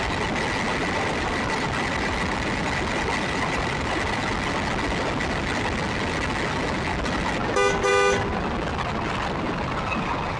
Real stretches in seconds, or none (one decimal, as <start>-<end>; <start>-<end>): 0.0-0.8; 4.3-10.4